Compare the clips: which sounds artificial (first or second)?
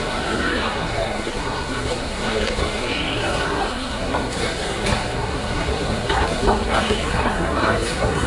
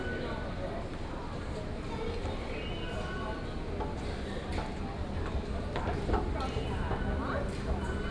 first